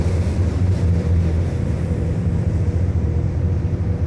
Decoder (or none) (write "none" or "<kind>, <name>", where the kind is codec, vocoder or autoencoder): vocoder, BigVGAN v2